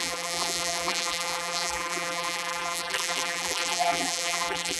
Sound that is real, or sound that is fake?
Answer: fake